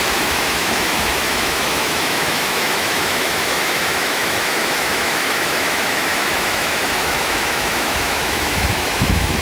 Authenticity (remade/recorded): remade